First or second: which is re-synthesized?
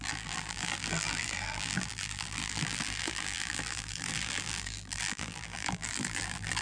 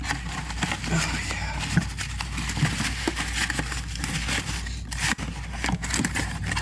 first